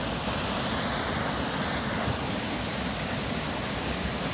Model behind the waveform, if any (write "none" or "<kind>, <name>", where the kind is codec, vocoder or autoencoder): none